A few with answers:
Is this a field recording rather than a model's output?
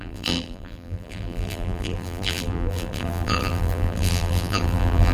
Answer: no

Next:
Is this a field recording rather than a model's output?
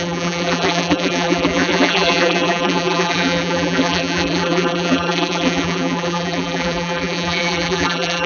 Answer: no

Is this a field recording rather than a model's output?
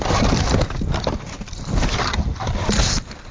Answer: yes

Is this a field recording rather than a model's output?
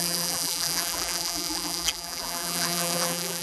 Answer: no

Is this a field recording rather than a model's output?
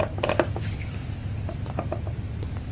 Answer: no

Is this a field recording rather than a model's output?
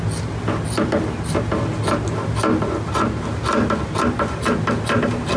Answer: yes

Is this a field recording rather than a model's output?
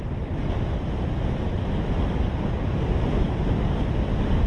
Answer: yes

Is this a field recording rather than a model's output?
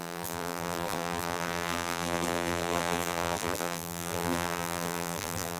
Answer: no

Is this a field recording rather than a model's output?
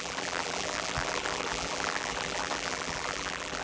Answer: no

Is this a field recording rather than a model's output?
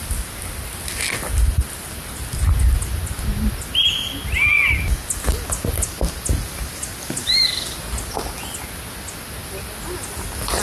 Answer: yes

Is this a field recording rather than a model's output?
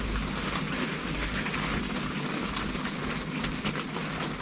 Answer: yes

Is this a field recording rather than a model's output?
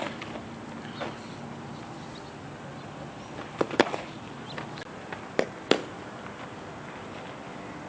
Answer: yes